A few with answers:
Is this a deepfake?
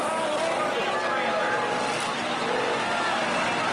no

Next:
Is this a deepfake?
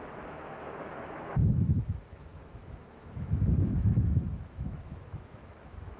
yes